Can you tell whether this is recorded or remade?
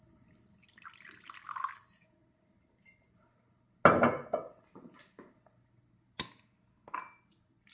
recorded